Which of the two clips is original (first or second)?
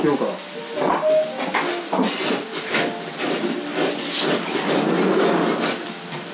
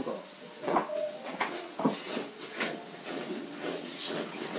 first